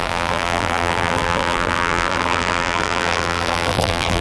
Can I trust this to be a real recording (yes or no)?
no